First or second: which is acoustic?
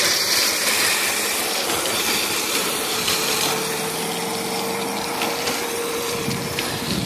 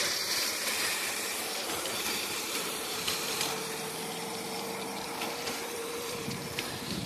first